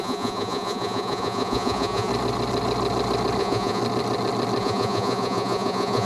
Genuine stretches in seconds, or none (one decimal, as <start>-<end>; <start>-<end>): 2.1-3.4; 3.8-4.6